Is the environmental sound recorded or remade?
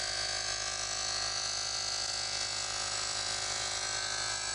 remade